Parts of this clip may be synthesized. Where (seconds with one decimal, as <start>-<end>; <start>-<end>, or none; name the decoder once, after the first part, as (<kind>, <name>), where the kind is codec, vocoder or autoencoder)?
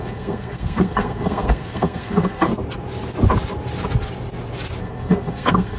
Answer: 0.0-2.5 (codec, SNAC); 4.8-5.8